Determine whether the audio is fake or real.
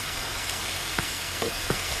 fake